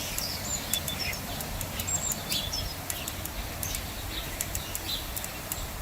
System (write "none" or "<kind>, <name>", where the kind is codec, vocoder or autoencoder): none